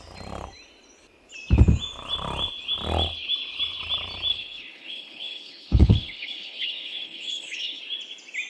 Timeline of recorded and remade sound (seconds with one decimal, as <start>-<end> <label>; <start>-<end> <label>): 0.0-4.3 recorded; 4.3-7.8 remade; 7.8-8.5 recorded